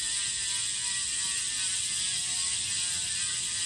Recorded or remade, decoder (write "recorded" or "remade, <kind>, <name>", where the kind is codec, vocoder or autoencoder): recorded